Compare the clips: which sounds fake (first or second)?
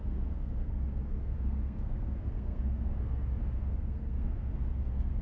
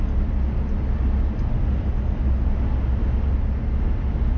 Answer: first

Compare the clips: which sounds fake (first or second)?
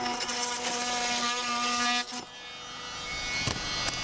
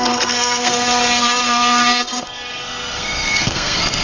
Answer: second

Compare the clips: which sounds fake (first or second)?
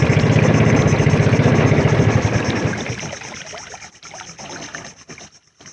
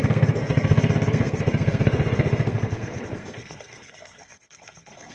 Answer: second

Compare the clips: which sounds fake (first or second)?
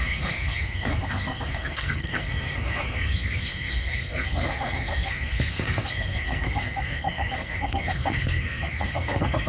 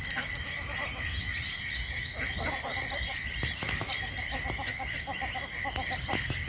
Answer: first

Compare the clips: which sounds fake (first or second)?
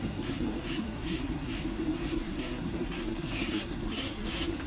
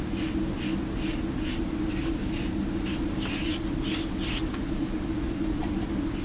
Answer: first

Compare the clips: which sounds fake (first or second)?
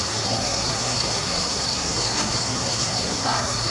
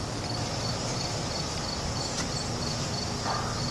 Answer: first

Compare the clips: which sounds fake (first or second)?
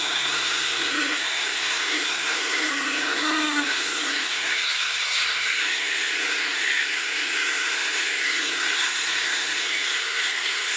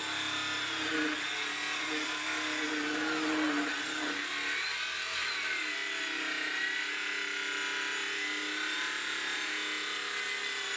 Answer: first